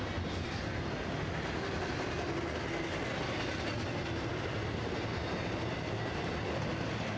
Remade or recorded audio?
recorded